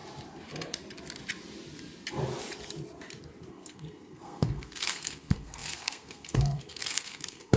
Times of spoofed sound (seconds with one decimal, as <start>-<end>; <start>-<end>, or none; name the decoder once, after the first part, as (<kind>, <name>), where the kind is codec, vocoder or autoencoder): 3.5-7.6 (codec, SNAC)